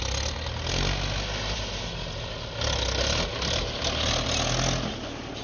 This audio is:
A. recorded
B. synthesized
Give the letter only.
A